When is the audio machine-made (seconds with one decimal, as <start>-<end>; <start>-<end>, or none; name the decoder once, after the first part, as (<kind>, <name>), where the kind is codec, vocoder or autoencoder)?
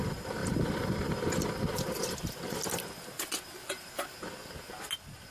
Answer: none